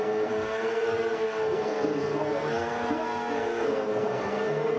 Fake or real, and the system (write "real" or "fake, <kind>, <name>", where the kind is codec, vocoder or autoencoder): fake, codec, SNAC